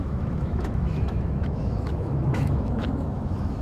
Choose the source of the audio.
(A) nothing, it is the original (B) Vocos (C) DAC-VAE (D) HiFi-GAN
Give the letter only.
C